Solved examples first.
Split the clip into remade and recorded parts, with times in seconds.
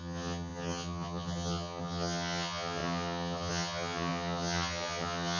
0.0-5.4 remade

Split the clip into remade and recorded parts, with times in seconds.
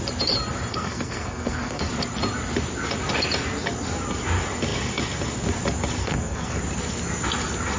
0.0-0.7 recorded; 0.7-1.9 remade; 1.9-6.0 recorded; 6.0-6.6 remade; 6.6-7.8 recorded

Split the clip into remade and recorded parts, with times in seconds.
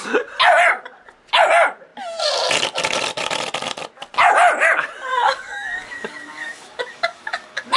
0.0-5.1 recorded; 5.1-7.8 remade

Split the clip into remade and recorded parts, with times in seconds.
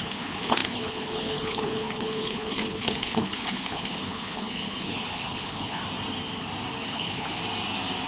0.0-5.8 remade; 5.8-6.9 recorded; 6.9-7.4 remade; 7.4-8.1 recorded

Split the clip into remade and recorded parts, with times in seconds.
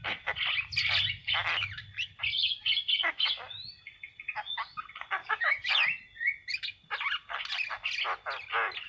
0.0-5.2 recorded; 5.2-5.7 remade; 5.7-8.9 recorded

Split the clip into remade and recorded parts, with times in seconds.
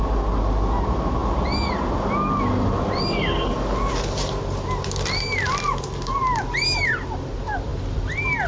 0.0-8.5 recorded